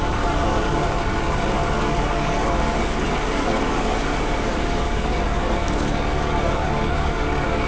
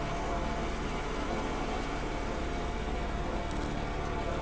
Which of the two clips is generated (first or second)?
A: first